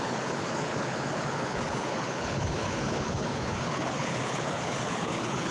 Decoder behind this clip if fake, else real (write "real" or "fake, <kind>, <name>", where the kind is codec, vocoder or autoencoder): fake, codec, HILCodec